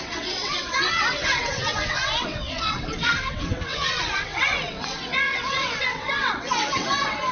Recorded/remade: remade